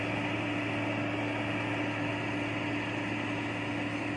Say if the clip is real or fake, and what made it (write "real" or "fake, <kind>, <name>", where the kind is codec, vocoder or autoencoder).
real